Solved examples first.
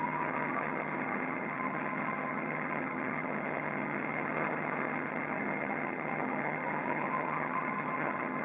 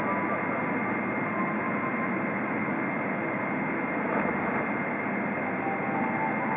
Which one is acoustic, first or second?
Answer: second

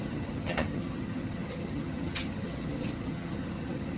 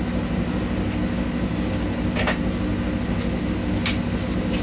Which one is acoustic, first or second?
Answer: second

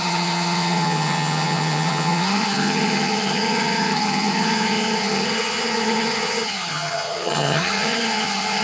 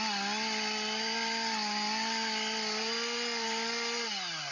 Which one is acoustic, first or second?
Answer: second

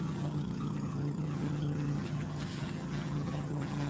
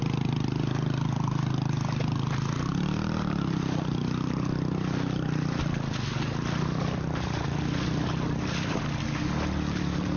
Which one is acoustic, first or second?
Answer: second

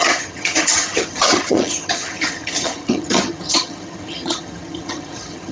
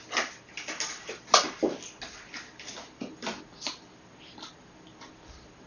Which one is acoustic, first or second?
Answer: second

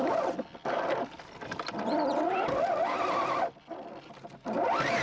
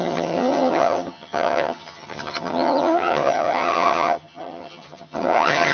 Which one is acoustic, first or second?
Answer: first